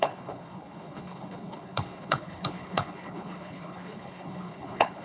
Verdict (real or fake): fake